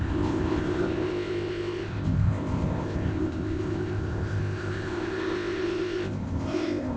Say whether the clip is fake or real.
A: fake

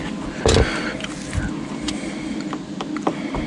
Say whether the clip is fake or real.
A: real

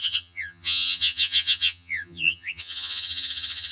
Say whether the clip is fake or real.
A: fake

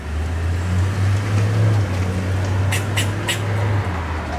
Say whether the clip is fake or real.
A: real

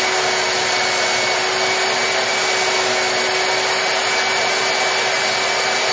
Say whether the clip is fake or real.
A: real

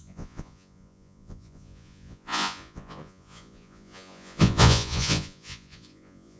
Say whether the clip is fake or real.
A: fake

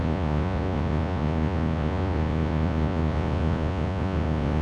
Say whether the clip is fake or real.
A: fake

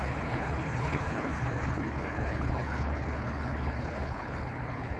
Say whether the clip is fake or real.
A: fake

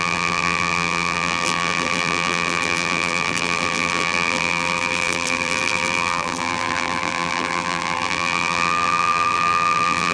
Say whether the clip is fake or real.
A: fake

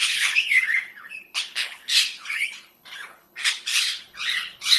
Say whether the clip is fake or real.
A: fake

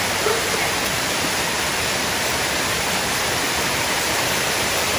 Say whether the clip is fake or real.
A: fake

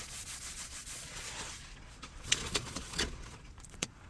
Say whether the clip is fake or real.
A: fake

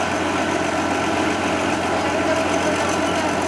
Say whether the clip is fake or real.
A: real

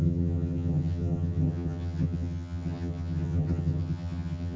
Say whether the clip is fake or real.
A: fake